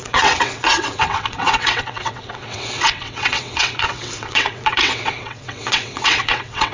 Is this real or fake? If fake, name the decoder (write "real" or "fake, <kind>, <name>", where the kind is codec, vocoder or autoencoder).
fake, vocoder, WaveNeXt